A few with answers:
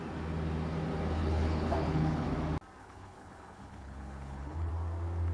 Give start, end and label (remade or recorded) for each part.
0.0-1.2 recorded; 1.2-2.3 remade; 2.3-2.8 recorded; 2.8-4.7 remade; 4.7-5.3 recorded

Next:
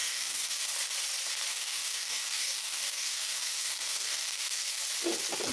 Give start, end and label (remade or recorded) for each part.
0.0-0.7 remade; 0.7-1.5 recorded; 1.5-4.8 remade; 4.8-5.5 recorded